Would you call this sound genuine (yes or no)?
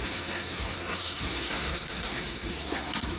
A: no